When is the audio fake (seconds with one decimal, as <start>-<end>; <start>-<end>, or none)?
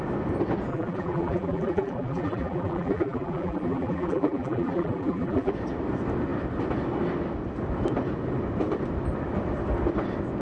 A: 0.7-5.5